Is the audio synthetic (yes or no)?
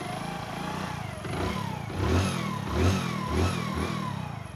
no